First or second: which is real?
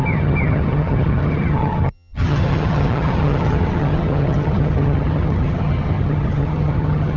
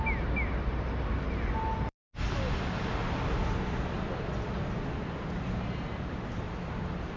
second